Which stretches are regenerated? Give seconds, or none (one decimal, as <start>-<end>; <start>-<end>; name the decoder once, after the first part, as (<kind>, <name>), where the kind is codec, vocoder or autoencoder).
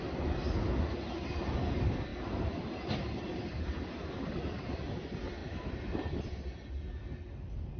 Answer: none